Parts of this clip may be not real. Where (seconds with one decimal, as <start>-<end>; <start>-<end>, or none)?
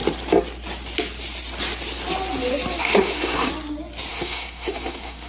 2.8-3.5; 4.1-5.3